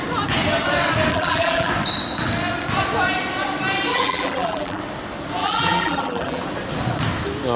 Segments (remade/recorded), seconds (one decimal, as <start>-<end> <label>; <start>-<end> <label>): 0.0-1.1 recorded; 1.1-1.7 remade; 1.7-3.9 recorded; 3.9-4.8 remade; 4.8-5.4 recorded; 5.4-6.4 remade; 6.4-7.6 recorded